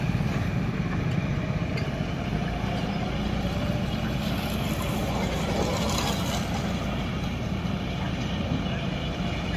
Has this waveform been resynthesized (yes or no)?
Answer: no